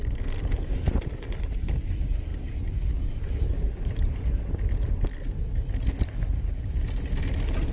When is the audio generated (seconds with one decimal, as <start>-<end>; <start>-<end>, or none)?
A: none